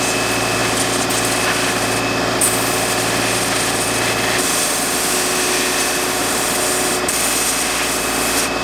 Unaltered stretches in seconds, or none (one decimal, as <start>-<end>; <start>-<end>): 0.0-6.2; 7.1-8.6